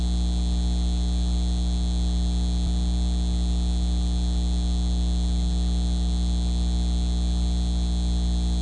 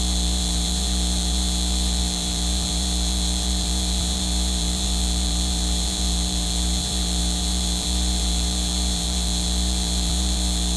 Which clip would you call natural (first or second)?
first